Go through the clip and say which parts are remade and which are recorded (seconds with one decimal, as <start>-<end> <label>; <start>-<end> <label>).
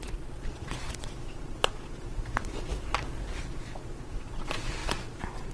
0.0-2.7 remade; 2.7-3.4 recorded; 3.4-5.5 remade